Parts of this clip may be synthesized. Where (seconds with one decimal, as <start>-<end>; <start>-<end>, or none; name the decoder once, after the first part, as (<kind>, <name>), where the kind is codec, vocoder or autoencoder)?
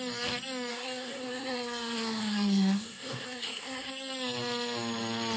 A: 0.7-3.9 (codec, SNAC)